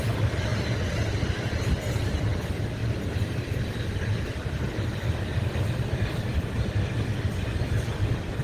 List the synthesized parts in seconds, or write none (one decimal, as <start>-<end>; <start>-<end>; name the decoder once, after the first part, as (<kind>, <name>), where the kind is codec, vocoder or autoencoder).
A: 0.0-0.5 (vocoder, BigVGAN v2); 1.7-2.8; 3.8-4.7; 6.2-8.4